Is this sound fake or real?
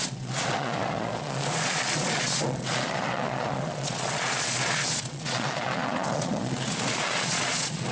fake